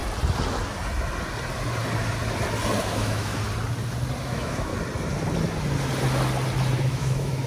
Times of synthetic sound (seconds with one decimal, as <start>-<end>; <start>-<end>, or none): 2.8-3.3; 4.2-4.7; 6.8-7.5